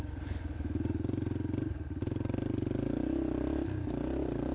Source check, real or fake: real